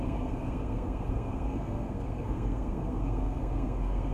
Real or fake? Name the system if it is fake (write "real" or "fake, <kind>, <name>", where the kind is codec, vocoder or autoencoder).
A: fake, codec, SNAC